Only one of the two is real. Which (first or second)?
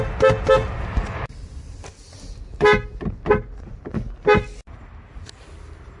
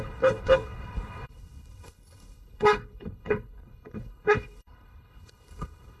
first